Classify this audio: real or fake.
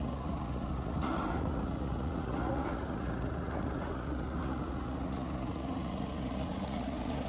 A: fake